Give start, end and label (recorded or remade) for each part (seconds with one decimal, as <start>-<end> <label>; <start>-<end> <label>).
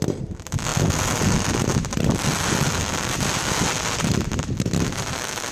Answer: 0.0-5.5 recorded